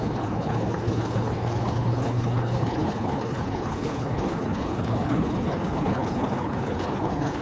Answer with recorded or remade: remade